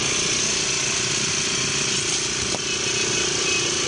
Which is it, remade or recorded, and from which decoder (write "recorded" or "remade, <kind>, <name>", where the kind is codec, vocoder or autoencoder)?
recorded